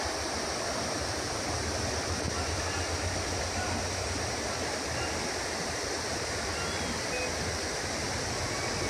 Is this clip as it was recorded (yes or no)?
yes